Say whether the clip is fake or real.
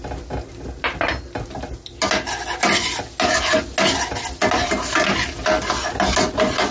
real